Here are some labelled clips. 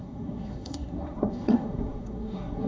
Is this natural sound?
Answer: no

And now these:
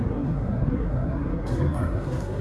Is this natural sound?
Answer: no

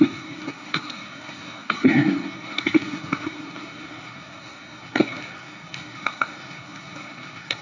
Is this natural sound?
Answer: no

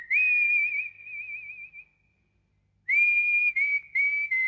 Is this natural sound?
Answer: yes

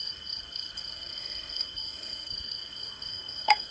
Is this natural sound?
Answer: no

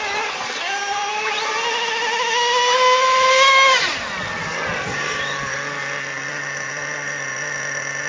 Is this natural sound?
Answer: yes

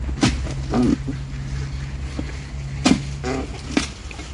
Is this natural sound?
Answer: yes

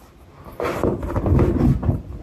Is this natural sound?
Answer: yes